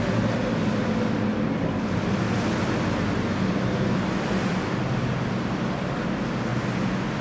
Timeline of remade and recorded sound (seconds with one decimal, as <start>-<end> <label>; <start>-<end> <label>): 0.0-7.2 recorded